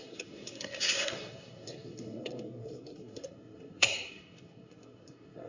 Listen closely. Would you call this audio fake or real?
fake